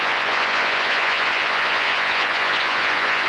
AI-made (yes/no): yes